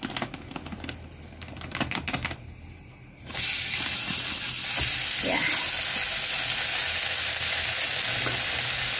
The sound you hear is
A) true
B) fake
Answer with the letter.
A